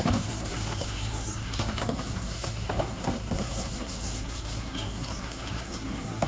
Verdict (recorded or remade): remade